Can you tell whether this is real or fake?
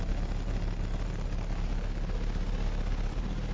real